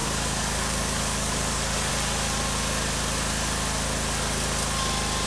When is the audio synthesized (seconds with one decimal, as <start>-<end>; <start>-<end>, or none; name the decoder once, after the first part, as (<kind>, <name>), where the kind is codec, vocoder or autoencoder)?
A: 0.0-1.9 (codec, DAC)